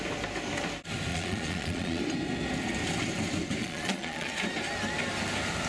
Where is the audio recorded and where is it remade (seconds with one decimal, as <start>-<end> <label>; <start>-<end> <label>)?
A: 0.0-1.1 recorded; 1.1-2.0 remade; 2.0-3.6 recorded; 3.6-4.3 remade; 4.3-5.7 recorded